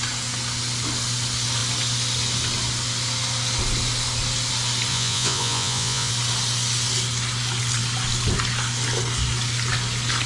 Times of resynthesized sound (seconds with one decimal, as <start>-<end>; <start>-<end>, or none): 4.9-6.1